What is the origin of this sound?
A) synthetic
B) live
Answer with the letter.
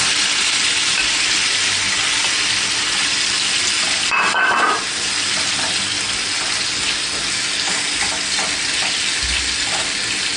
B